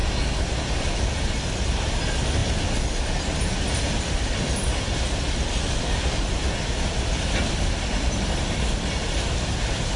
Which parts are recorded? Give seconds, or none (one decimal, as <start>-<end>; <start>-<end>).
0.0-10.0